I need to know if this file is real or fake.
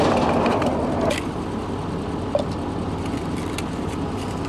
real